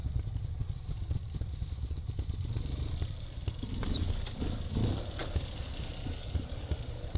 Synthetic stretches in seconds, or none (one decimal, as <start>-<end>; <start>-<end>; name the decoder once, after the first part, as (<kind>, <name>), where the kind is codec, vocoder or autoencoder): none